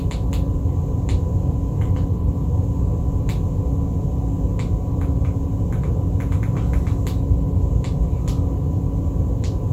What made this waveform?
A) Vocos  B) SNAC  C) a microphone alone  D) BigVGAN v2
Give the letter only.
C